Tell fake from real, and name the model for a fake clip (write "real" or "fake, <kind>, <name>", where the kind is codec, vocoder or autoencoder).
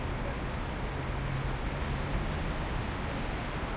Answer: real